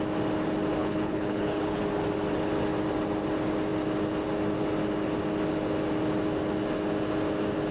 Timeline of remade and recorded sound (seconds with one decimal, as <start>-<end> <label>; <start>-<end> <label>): 0.0-0.8 recorded; 0.8-1.8 remade; 1.8-7.7 recorded